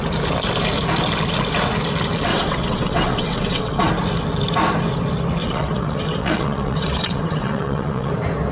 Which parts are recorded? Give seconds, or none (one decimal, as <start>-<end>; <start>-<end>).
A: 0.0-2.3; 3.9-5.4; 8.1-8.5